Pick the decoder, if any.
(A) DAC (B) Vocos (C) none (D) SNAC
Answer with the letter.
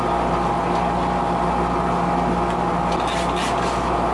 C